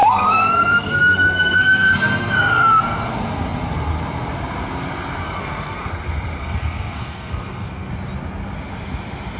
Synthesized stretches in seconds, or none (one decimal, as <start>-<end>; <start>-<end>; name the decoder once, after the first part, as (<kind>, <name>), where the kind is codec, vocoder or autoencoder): 0.0-3.1 (codec, SNAC); 5.2-5.9; 6.4-7.9